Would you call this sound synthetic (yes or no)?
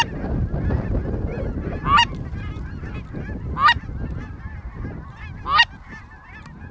no